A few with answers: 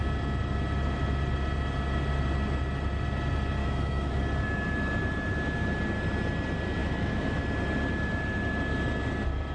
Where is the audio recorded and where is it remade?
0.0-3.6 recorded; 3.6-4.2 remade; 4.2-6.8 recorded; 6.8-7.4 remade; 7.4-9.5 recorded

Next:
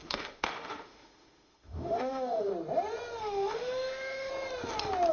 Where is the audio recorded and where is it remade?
0.0-2.5 remade; 2.5-3.2 recorded; 3.2-4.3 remade; 4.3-5.1 recorded

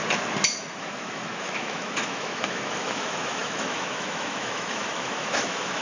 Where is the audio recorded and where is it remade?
0.0-0.8 recorded; 0.8-5.8 remade

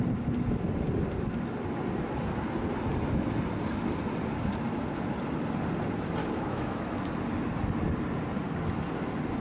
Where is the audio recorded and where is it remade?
0.0-6.2 recorded; 6.2-7.1 remade; 7.1-9.4 recorded

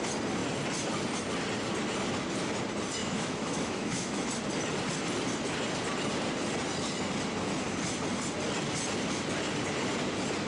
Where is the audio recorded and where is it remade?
0.0-3.0 recorded; 3.0-4.2 remade; 4.2-10.5 recorded

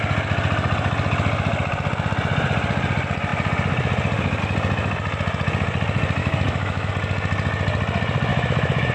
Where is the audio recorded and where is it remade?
0.0-6.2 recorded; 6.2-6.9 remade; 6.9-8.3 recorded; 8.3-8.9 remade